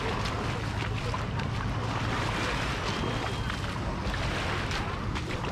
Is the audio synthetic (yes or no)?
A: no